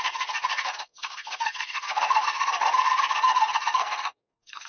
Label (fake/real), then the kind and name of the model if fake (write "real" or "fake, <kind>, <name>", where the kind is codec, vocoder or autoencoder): fake, codec, SNAC